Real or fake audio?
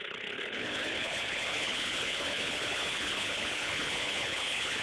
fake